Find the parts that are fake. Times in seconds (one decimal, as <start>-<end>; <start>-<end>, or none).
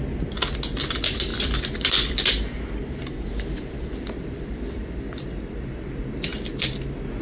1.3-5.6